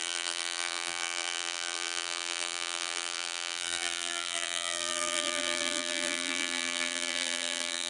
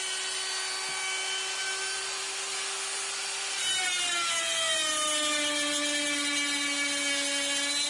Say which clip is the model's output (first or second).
first